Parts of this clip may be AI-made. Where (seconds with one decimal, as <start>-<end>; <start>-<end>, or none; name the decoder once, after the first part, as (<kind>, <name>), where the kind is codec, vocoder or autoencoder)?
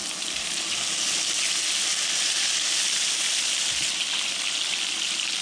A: none